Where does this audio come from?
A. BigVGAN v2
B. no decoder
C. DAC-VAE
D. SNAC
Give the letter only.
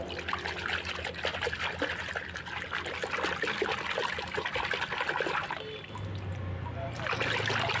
B